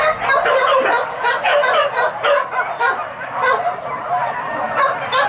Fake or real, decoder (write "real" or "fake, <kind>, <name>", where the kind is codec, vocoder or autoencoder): real